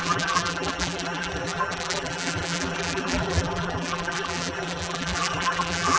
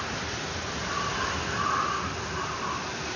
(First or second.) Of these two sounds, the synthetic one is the first